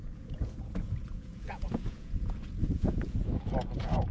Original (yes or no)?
no